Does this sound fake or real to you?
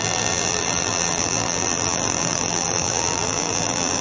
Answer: fake